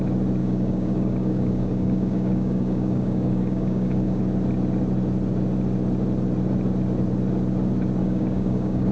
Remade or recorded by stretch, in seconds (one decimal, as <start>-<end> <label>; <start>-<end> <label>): 0.0-0.4 recorded; 0.4-4.2 remade; 4.2-8.0 recorded; 8.0-8.9 remade

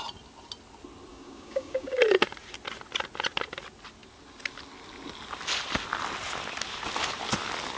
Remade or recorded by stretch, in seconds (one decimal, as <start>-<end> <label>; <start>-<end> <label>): 0.0-1.1 recorded; 1.1-2.0 remade; 2.0-7.8 recorded

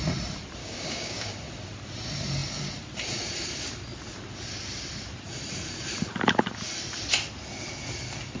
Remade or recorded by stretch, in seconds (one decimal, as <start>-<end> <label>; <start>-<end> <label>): 0.0-0.6 recorded; 0.6-1.3 remade; 1.3-8.4 recorded

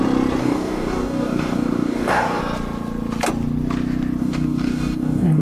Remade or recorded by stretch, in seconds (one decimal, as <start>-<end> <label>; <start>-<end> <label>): 0.0-0.4 recorded; 0.4-2.4 remade; 2.4-4.2 recorded; 4.2-5.4 remade

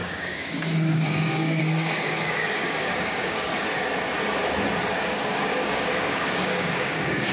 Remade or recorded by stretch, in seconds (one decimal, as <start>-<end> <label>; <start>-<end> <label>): 0.0-3.5 remade; 3.5-4.9 recorded; 4.9-7.3 remade

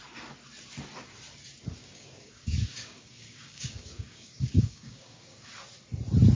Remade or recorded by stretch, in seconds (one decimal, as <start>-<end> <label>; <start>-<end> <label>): 0.0-1.7 recorded; 1.7-5.5 remade; 5.5-6.4 recorded

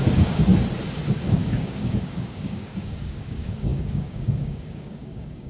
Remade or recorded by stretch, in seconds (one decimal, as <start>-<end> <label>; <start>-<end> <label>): 0.0-0.5 remade; 0.5-1.1 recorded; 1.1-5.5 remade